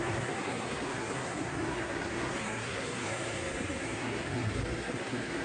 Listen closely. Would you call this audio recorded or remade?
remade